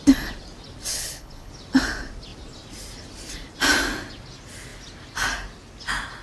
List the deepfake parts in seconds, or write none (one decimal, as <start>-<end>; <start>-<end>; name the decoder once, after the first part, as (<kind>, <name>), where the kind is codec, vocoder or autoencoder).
0.9-1.5 (codec, HILCodec)